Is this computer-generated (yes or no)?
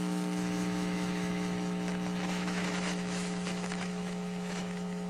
yes